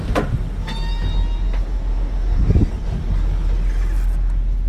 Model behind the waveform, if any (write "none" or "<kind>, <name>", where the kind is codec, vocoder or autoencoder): none